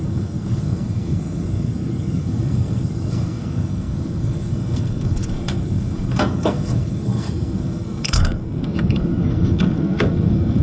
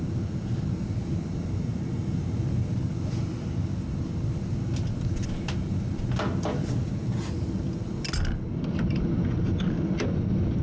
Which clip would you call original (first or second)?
second